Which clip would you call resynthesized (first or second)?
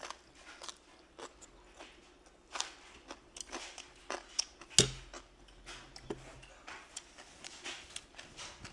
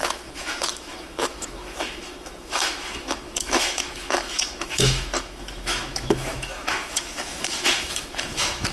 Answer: second